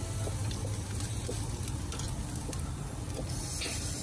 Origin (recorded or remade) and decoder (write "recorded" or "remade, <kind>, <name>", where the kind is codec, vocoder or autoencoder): recorded